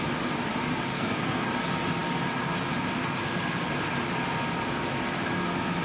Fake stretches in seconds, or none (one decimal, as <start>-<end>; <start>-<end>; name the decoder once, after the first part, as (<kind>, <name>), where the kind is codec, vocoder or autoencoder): 0.9-1.5 (codec, SNAC)